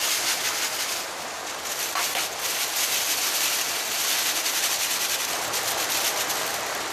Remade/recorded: recorded